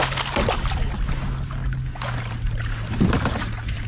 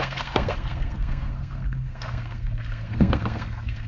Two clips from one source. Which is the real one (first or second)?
first